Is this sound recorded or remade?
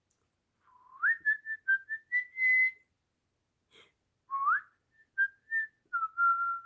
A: recorded